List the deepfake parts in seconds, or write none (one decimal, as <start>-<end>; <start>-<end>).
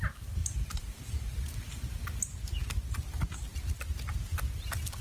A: 0.4-1.4